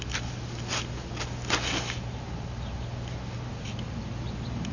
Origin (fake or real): real